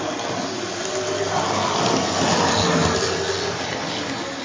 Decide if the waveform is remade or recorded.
recorded